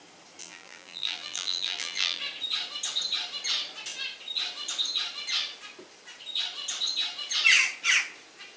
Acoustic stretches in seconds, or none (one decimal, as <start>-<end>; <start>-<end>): 0.0-0.4; 2.2-8.6